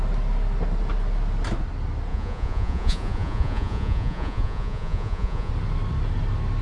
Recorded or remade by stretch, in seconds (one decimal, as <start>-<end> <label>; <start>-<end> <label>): 0.0-2.1 recorded; 2.1-5.5 remade; 5.5-6.6 recorded